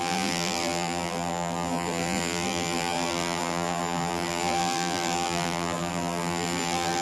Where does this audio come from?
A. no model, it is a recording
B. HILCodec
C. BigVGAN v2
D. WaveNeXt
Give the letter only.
C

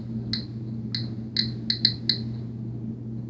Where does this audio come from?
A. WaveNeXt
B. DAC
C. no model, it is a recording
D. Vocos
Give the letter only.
C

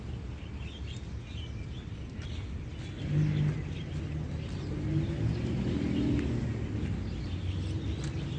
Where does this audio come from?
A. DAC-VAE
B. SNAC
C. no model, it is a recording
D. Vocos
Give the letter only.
C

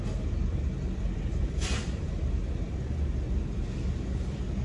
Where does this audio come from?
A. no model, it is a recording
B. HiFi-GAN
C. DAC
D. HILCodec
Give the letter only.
A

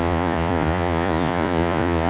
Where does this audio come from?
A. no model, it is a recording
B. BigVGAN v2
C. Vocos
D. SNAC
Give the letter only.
C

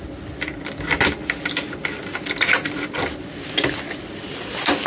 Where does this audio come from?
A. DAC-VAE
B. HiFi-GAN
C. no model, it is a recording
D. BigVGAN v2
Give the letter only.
C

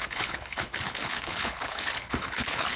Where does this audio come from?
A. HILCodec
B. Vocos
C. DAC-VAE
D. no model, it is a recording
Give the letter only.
A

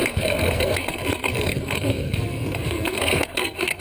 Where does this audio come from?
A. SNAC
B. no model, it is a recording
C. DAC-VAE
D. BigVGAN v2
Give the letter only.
A